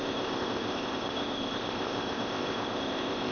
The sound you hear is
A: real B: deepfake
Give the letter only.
B